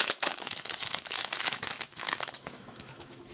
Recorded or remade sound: remade